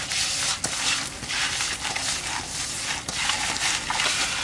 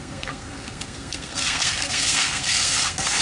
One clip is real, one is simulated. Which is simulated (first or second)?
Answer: second